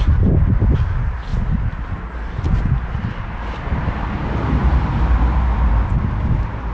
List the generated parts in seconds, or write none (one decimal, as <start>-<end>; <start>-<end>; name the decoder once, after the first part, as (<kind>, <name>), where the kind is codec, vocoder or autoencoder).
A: 3.7-4.9 (vocoder, BigVGAN v2)